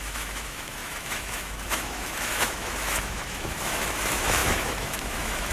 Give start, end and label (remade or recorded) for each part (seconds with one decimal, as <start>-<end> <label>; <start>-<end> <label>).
0.0-5.5 remade